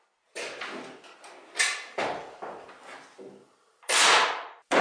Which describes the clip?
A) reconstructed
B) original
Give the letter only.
B